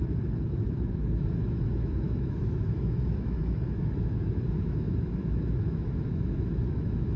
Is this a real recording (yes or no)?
no